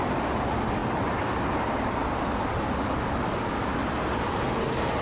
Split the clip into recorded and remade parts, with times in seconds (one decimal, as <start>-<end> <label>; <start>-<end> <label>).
0.0-5.0 recorded